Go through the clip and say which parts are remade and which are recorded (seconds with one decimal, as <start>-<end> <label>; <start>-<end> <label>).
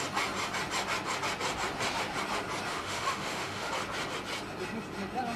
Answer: 0.0-2.7 recorded; 2.7-3.7 remade; 3.7-5.4 recorded